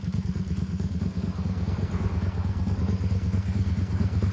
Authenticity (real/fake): fake